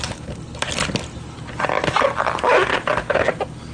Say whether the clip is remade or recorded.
recorded